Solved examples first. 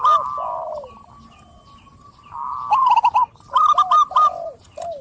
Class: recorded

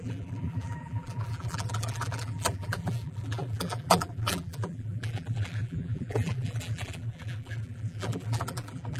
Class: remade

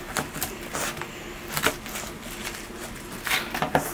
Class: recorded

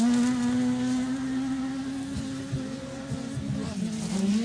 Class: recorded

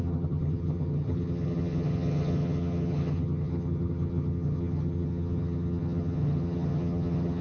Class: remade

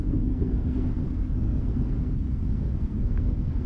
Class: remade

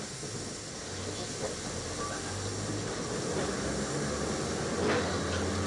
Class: recorded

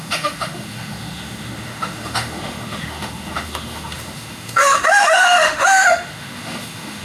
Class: remade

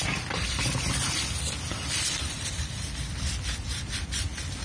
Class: remade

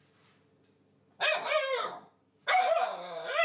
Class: recorded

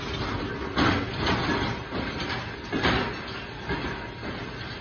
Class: recorded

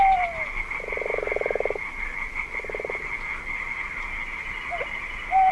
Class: recorded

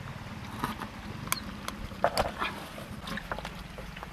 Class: recorded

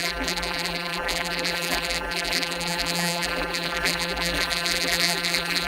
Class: remade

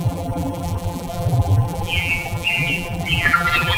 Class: remade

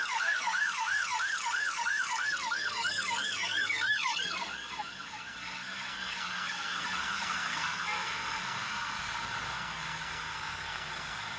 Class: remade